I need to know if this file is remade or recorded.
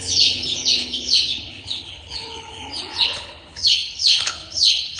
remade